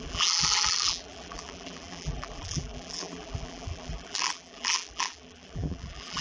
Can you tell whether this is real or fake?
fake